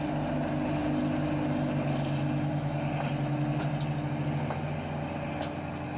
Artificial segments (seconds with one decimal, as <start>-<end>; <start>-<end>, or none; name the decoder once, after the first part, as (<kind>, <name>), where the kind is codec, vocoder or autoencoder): none